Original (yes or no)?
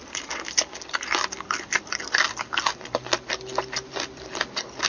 yes